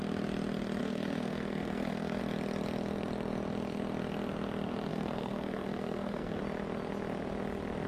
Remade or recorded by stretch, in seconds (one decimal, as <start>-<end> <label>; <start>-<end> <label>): 0.0-0.8 recorded; 0.8-2.2 remade; 2.2-4.9 recorded; 4.9-6.4 remade; 6.4-7.9 recorded